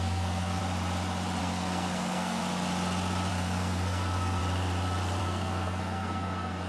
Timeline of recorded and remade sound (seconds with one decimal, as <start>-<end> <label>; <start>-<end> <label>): 0.0-0.6 remade; 0.6-1.4 recorded; 1.4-2.4 remade; 2.4-3.3 recorded; 3.3-4.4 remade; 4.4-5.2 recorded; 5.2-6.7 remade

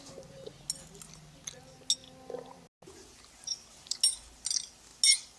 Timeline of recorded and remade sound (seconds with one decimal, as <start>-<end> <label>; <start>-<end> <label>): 0.0-5.4 recorded

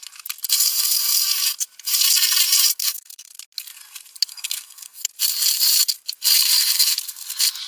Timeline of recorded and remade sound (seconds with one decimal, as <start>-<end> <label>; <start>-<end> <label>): 0.0-2.8 recorded; 2.8-3.3 remade; 3.3-4.3 recorded; 4.3-5.0 remade; 5.0-7.7 recorded

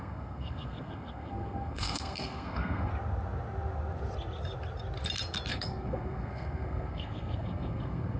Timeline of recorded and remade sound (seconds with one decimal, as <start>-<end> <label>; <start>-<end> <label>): 0.0-2.9 remade; 2.9-5.5 recorded; 5.5-8.2 remade

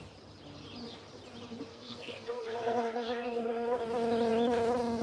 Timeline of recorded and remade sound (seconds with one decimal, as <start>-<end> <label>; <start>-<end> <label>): 0.0-1.7 recorded; 1.7-3.8 remade; 3.8-5.0 recorded

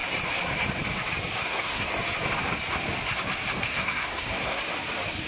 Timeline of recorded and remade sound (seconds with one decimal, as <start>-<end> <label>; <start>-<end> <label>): 0.0-1.4 recorded; 1.4-1.9 remade; 1.9-3.6 recorded; 3.6-4.6 remade; 4.6-5.3 recorded

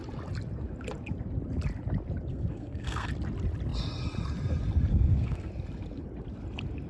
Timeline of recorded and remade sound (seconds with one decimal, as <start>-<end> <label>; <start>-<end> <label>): 0.0-2.3 recorded; 2.3-3.1 remade; 3.1-4.9 recorded; 4.9-5.5 remade; 5.5-6.9 recorded